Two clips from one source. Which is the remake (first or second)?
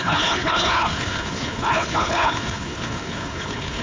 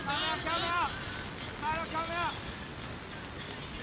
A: first